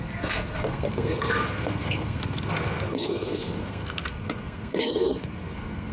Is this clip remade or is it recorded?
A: remade